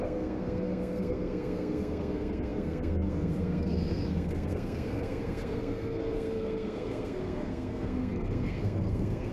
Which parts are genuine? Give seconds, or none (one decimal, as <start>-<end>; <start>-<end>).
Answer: none